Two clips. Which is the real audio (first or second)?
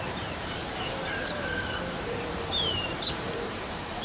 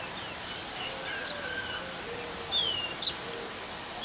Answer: second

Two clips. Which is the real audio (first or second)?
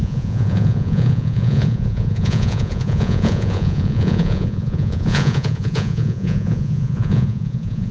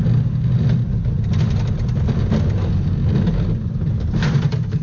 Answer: second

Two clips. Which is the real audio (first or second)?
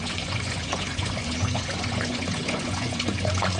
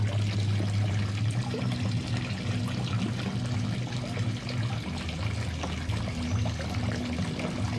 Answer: second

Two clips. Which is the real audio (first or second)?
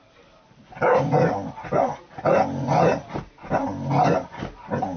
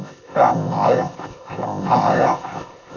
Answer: first